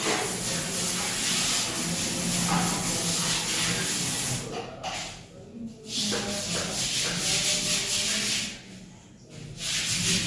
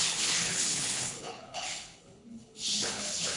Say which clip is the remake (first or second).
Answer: second